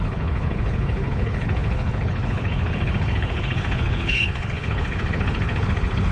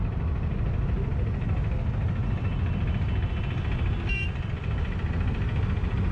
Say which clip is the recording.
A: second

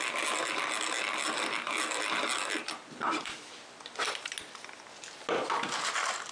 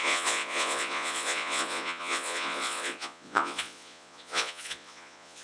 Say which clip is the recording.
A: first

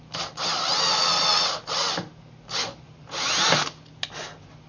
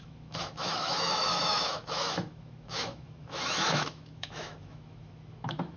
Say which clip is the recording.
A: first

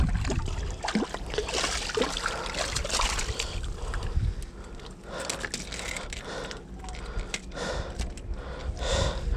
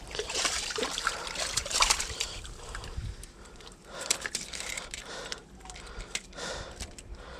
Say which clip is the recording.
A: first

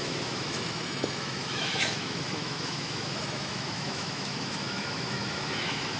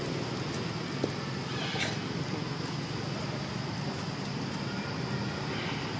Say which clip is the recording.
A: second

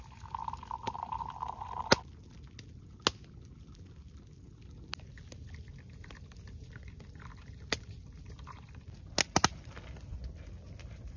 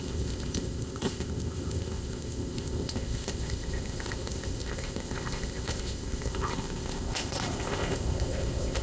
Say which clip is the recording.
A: first